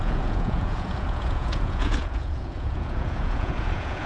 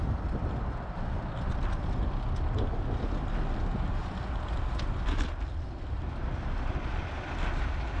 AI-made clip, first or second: first